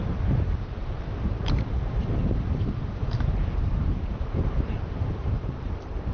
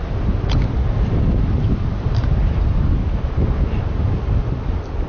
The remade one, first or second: first